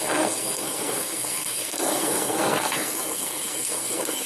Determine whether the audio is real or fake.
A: fake